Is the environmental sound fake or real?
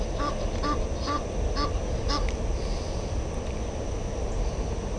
real